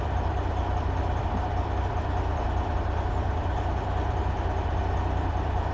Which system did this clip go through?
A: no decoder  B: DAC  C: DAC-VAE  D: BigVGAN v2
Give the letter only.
D